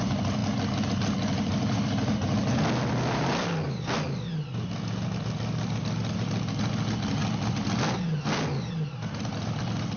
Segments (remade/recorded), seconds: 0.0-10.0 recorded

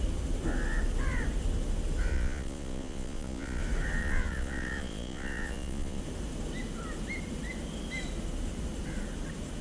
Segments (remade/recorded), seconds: 0.0-2.1 recorded; 2.1-3.6 remade; 3.6-4.0 recorded; 4.0-6.0 remade; 6.0-9.6 recorded

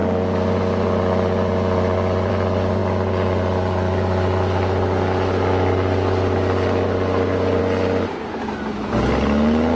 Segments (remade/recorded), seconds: 0.0-9.8 recorded

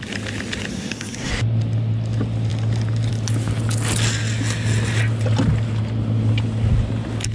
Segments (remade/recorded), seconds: 0.0-0.7 recorded; 0.7-1.3 remade; 1.3-7.3 recorded

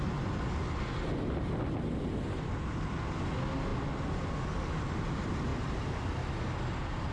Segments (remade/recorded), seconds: 0.0-3.7 recorded; 3.7-4.2 remade; 4.2-5.5 recorded; 5.5-7.1 remade

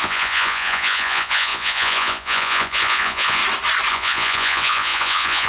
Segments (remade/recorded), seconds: 0.0-3.4 remade; 3.4-3.9 recorded; 3.9-5.5 remade

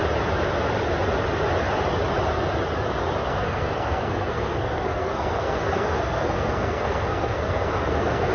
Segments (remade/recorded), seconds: 0.0-3.2 recorded; 3.2-8.3 remade

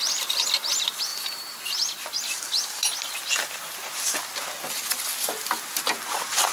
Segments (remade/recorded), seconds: 0.0-6.5 recorded